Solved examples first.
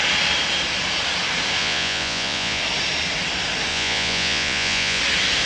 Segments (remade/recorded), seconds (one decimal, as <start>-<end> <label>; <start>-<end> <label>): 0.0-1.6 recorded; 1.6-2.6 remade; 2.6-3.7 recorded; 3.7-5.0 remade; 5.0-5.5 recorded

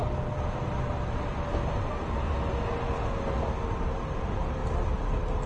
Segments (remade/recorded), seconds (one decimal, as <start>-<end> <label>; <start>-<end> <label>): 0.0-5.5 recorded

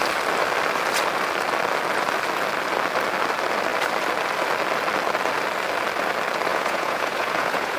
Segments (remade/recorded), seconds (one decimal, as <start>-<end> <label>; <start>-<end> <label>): 0.0-6.5 recorded; 6.5-7.8 remade

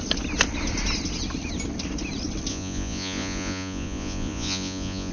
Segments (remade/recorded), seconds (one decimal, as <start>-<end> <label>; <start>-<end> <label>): 0.0-2.5 recorded; 2.5-5.1 remade

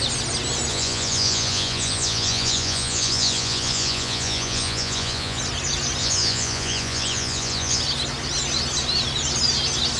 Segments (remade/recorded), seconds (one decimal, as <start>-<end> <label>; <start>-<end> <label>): 0.0-0.7 recorded; 0.7-5.4 remade; 5.4-6.0 recorded; 6.0-7.8 remade; 7.8-10.0 recorded